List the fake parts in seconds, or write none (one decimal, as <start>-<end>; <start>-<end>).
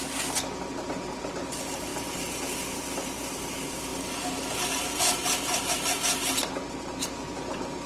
none